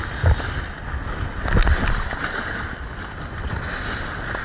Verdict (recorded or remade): recorded